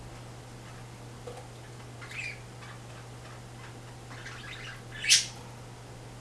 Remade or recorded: recorded